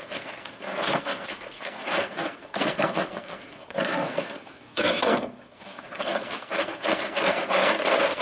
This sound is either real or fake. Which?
fake